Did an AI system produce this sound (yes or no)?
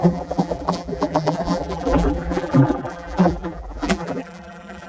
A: yes